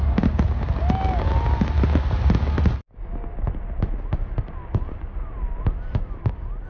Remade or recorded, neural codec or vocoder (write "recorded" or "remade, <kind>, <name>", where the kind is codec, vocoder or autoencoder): recorded